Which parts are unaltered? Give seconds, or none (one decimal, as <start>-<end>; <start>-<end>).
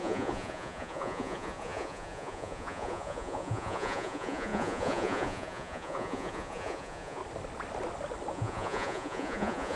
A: 7.2-8.3